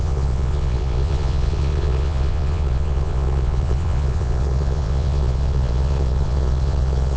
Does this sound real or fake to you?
fake